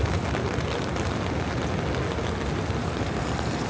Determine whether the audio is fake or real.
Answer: real